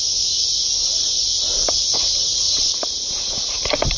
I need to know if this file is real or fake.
fake